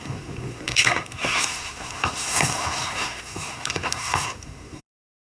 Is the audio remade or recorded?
remade